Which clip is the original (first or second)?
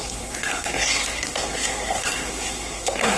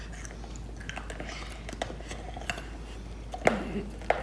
second